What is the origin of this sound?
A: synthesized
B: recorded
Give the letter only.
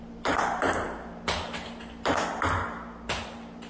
B